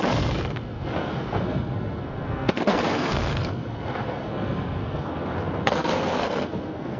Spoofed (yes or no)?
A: yes